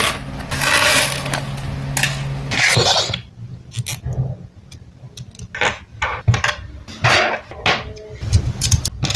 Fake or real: real